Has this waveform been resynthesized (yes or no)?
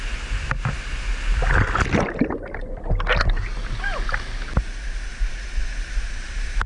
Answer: no